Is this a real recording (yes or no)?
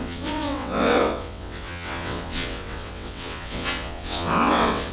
no